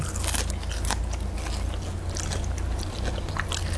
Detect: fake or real real